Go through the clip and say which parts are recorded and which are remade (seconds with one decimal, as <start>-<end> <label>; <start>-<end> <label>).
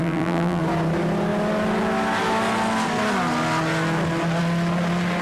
0.0-0.6 remade; 0.6-5.2 recorded